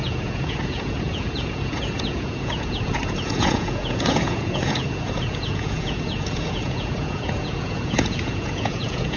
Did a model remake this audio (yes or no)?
yes